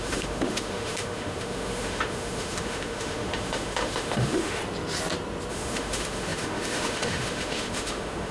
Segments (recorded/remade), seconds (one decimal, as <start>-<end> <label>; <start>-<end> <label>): 0.0-4.6 remade; 4.6-5.5 recorded; 5.5-8.3 remade